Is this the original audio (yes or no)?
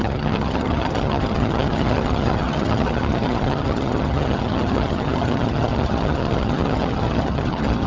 no